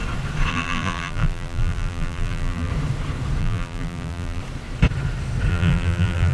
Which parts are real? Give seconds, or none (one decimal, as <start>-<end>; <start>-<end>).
0.0-0.5; 2.7-3.4; 4.4-5.5